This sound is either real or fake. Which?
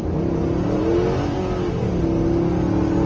real